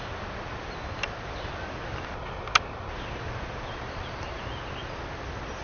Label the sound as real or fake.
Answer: real